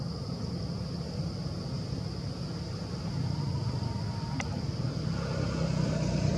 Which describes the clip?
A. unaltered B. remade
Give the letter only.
A